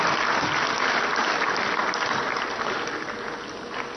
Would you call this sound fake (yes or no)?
no